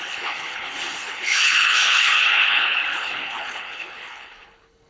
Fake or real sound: fake